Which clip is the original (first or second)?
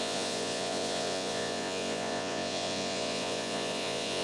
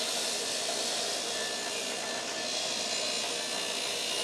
second